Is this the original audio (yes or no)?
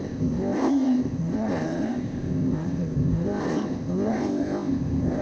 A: no